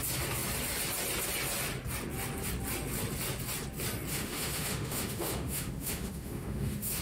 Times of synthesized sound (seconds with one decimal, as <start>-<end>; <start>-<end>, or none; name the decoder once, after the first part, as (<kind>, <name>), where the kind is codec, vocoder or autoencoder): 4.1-7.0 (autoencoder, DAC-VAE)